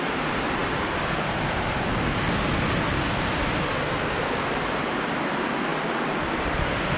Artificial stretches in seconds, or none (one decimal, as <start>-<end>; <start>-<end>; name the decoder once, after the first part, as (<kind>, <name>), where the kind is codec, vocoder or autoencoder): none